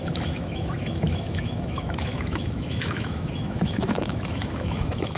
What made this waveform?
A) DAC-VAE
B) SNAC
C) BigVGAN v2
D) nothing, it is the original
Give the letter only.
A